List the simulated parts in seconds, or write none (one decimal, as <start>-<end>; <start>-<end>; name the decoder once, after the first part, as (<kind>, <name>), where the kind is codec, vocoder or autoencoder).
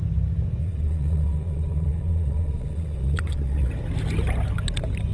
0.6-3.7 (vocoder, Vocos)